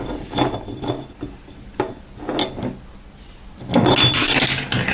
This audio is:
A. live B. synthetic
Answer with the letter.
A